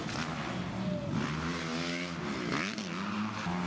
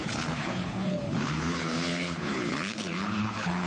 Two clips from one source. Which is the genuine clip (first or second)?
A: first